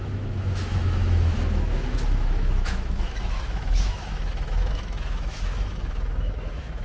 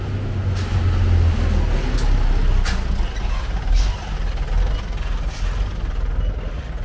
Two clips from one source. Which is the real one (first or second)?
second